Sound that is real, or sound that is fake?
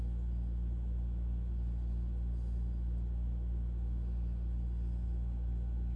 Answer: real